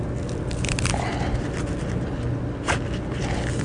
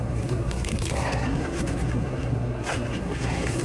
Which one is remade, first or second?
second